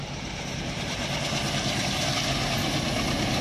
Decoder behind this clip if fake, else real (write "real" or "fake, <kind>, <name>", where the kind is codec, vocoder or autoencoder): real